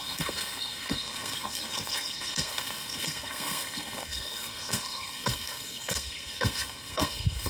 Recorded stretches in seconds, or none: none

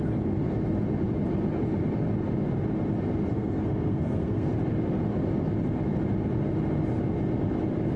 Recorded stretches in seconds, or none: 0.0-3.3; 4.5-8.0

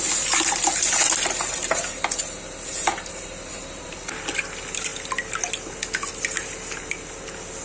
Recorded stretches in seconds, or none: 0.0-7.6